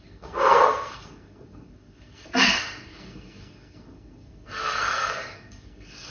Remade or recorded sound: remade